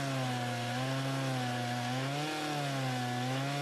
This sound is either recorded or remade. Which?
recorded